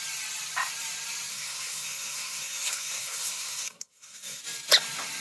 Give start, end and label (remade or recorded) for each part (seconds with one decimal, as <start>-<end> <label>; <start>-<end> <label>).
0.0-1.3 recorded; 1.3-4.4 remade; 4.4-5.2 recorded